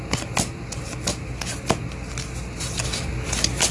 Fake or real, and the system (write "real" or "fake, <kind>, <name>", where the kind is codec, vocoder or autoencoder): real